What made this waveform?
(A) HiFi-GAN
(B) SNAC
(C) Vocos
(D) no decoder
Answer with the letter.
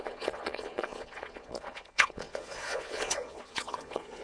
C